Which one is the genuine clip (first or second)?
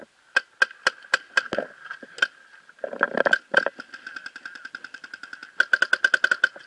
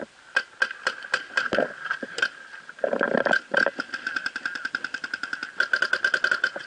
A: first